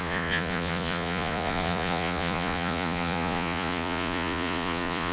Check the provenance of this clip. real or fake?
fake